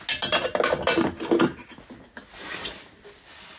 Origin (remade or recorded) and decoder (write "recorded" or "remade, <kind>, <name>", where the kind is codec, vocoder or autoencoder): recorded